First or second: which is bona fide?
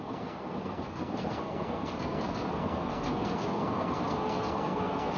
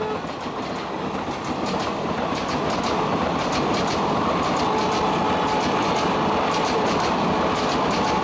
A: second